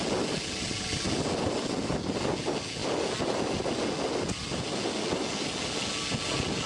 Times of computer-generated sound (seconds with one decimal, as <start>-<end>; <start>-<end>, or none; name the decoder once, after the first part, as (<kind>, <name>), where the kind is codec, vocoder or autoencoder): none